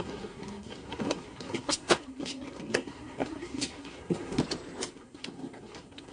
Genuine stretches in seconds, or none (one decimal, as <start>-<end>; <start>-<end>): 4.4-4.9